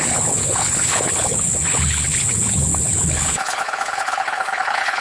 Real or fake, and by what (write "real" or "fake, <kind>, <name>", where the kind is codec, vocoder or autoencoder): fake, codec, HILCodec